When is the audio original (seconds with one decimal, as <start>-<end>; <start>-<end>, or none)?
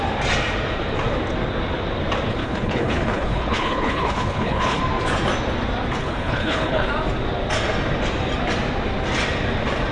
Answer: 0.0-2.3; 4.8-6.0; 6.9-9.9